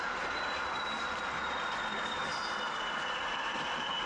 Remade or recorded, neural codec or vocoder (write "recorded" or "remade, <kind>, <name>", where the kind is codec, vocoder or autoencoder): recorded